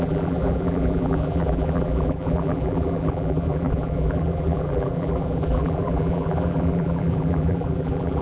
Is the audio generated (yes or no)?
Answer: yes